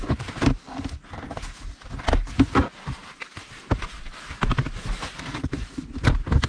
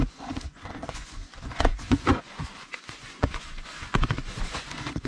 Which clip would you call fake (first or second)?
second